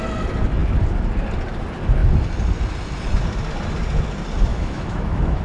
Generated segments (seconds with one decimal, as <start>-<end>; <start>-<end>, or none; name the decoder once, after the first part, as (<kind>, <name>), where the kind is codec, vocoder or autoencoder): 4.5-5.4 (autoencoder, DAC-VAE)